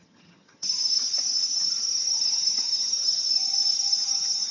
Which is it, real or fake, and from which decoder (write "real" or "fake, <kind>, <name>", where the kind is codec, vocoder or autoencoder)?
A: fake, vocoder, HiFi-GAN